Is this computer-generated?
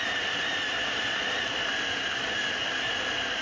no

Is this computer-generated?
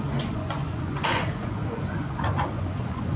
yes